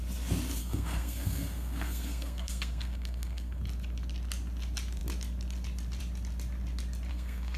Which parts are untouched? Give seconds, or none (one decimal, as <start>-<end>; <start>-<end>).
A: 0.0-0.6; 3.6-7.1